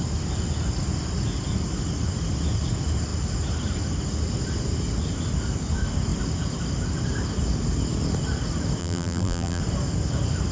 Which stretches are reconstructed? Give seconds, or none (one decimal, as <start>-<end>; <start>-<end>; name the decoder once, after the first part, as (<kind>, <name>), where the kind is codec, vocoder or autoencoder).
8.8-9.6 (vocoder, BigVGAN v2)